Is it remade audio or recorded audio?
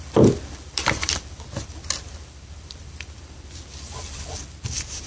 remade